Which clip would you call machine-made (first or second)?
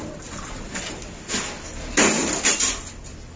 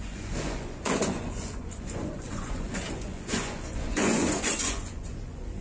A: second